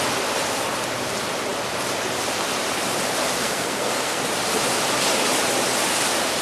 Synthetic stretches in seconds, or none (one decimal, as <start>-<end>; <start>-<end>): 3.4-4.2